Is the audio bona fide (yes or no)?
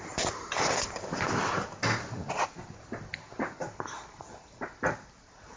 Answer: yes